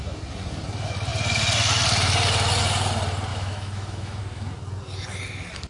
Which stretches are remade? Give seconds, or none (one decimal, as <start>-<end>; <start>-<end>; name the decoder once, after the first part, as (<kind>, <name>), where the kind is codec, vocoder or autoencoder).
3.3-4.2 (autoencoder, DAC-VAE)